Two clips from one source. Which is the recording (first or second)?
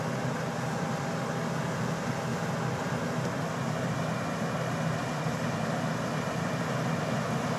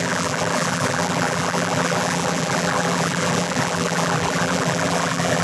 first